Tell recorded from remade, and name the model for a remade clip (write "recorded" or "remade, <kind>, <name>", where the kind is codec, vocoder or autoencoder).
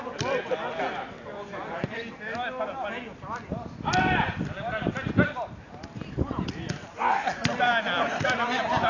recorded